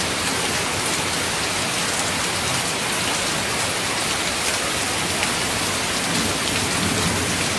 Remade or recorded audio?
recorded